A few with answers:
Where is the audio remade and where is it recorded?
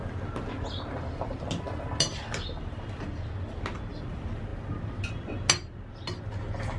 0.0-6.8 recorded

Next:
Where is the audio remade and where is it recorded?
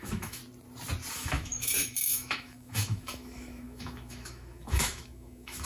0.0-0.4 remade; 0.4-1.1 recorded; 1.1-5.7 remade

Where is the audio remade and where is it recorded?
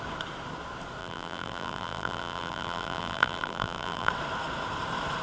0.0-1.0 recorded; 1.0-4.1 remade; 4.1-5.2 recorded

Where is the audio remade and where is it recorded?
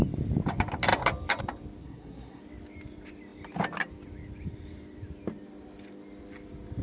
0.0-1.8 recorded; 1.8-2.4 remade; 2.4-6.8 recorded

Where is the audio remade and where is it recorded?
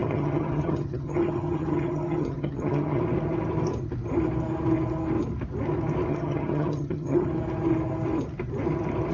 0.0-3.0 remade; 3.0-6.1 recorded; 6.1-7.3 remade; 7.3-9.1 recorded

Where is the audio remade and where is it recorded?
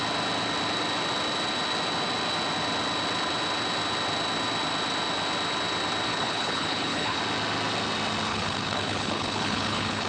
0.0-6.1 recorded; 6.1-7.2 remade; 7.2-8.3 recorded; 8.3-10.1 remade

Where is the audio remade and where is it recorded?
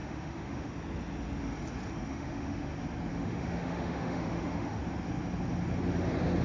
0.0-0.7 remade; 0.7-2.1 recorded; 2.1-2.7 remade; 2.7-3.1 recorded; 3.1-4.8 remade; 4.8-6.4 recorded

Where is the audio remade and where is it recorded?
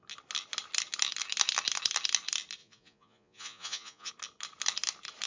0.0-2.6 recorded; 2.6-4.1 remade; 4.1-5.3 recorded